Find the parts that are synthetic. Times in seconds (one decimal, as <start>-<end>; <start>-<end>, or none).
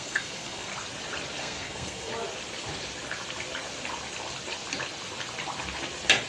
0.0-0.7; 1.4-2.1